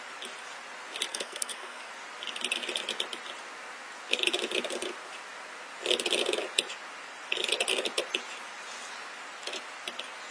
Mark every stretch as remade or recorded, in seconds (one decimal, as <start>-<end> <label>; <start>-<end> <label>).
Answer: 0.0-1.1 recorded; 1.1-1.9 remade; 1.9-10.3 recorded